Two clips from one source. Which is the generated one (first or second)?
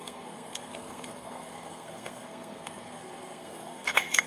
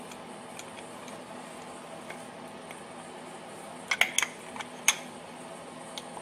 first